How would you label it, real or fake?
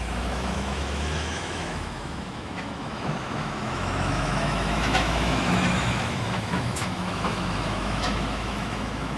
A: fake